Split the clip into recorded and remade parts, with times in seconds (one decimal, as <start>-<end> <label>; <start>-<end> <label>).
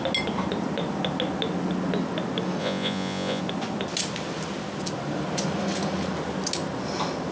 0.0-2.6 recorded; 2.6-3.4 remade; 3.4-7.3 recorded